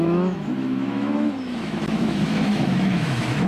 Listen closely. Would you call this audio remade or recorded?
remade